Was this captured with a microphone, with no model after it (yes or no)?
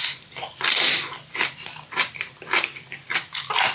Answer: no